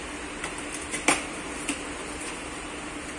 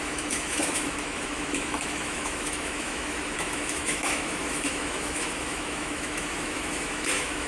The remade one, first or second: second